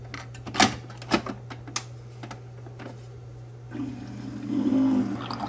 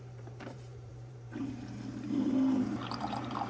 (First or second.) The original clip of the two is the first